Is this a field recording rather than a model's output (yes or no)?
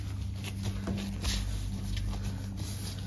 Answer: yes